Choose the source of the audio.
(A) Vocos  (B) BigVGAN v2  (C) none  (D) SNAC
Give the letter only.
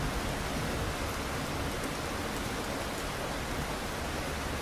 C